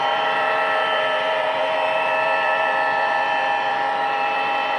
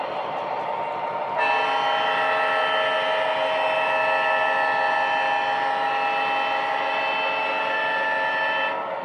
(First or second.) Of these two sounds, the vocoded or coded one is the first